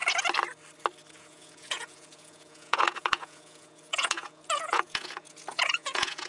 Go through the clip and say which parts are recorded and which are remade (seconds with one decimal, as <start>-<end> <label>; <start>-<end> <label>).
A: 0.0-1.1 recorded; 1.1-6.3 remade